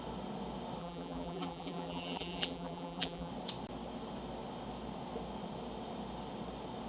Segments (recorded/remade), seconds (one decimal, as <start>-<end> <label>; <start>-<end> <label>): 0.0-0.8 recorded; 0.8-3.3 remade; 3.3-6.9 recorded